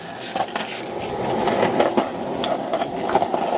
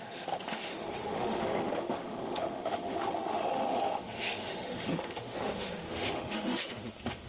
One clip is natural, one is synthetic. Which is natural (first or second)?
first